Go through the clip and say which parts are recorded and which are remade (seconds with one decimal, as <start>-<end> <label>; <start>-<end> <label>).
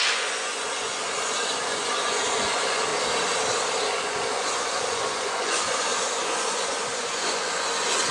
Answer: 0.0-2.9 remade; 2.9-3.9 recorded; 3.9-8.1 remade